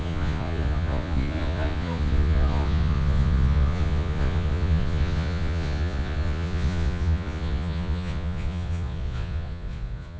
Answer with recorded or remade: remade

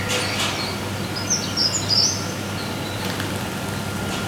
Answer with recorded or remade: recorded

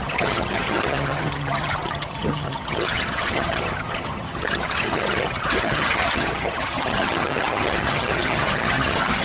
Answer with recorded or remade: remade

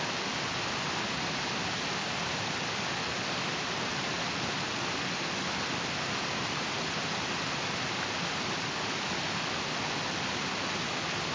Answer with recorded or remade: recorded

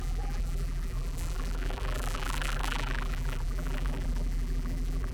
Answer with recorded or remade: remade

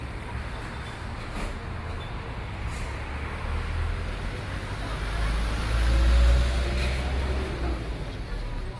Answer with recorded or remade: recorded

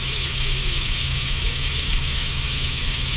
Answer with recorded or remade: remade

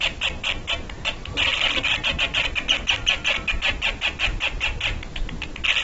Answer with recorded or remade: recorded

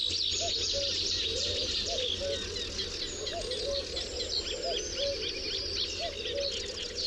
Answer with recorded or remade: recorded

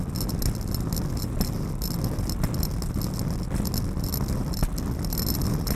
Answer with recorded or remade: recorded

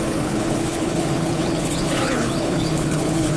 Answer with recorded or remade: remade